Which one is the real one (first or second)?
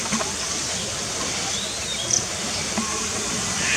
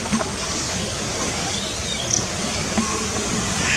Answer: first